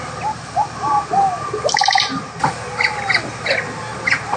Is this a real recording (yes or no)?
no